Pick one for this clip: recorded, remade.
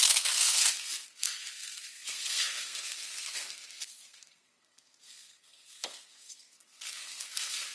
remade